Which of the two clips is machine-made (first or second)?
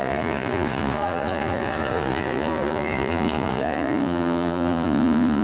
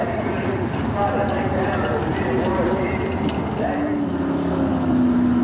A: first